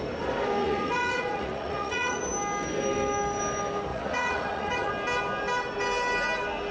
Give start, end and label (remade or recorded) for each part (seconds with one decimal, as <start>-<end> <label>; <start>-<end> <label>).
0.0-0.6 recorded; 0.6-2.2 remade; 2.2-3.9 recorded; 3.9-4.9 remade; 4.9-6.7 recorded